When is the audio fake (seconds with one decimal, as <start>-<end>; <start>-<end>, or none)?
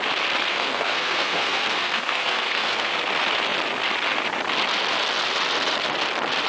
0.5-2.9